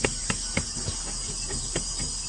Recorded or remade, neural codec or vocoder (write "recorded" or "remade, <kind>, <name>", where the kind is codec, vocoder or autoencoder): recorded